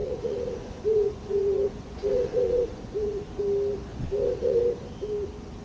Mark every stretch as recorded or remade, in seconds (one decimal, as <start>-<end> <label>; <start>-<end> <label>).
0.0-3.4 remade; 3.4-3.9 recorded; 3.9-4.6 remade; 4.6-5.6 recorded